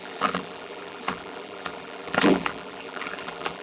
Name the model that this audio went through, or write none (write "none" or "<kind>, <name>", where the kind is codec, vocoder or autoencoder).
vocoder, BigVGAN v2